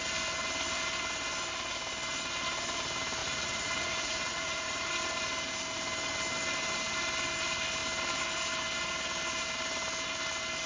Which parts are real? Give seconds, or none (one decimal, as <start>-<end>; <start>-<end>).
0.0-3.2; 4.9-10.7